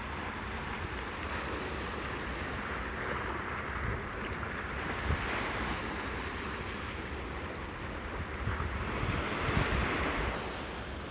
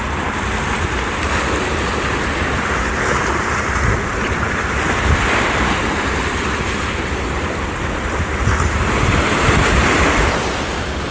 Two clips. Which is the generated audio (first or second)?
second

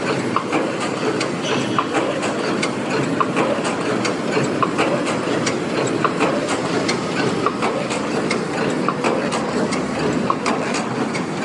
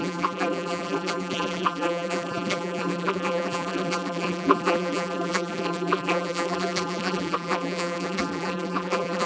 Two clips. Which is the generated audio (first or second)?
second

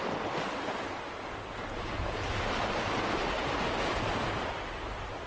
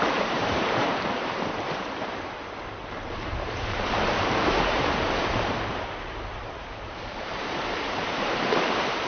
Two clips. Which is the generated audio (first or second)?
second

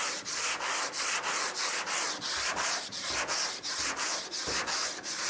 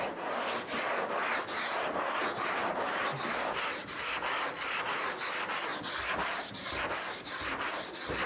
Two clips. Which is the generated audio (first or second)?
first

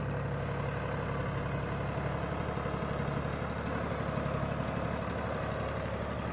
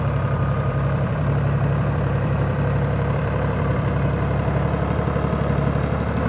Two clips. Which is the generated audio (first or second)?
second